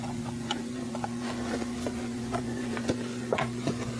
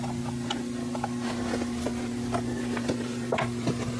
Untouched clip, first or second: second